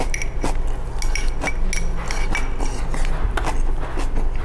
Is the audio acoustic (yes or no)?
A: yes